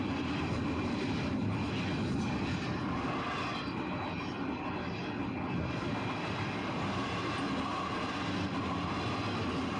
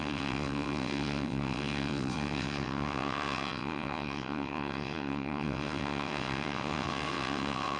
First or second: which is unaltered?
first